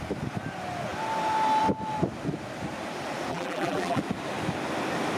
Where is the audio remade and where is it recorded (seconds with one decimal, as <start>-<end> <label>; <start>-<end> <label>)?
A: 0.0-3.3 recorded; 3.3-4.0 remade; 4.0-5.2 recorded